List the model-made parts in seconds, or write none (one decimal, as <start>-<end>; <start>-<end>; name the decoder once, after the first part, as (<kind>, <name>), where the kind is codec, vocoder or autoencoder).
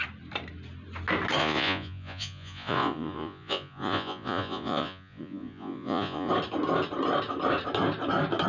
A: 1.4-6.3 (vocoder, Vocos)